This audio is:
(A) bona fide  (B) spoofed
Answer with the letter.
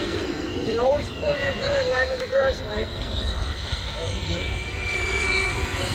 B